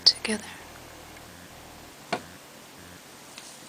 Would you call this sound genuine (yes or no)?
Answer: yes